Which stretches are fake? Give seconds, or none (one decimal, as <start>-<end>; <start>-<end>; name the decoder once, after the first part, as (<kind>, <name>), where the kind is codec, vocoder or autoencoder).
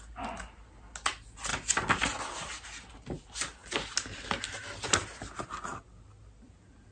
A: none